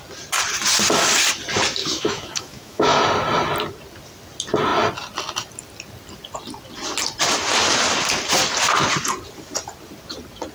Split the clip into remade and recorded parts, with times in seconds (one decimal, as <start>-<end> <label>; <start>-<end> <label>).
0.0-1.8 recorded; 1.8-3.0 remade; 3.0-10.5 recorded